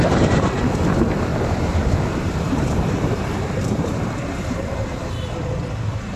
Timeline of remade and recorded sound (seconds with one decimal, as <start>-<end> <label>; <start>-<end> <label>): 0.0-1.3 recorded; 1.3-5.0 remade; 5.0-6.2 recorded